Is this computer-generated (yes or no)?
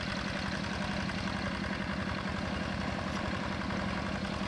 no